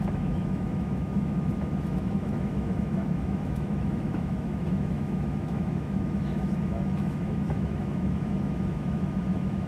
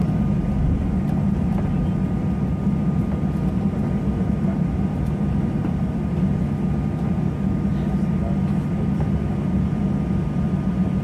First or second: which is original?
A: second